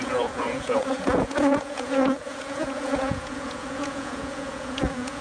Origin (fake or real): fake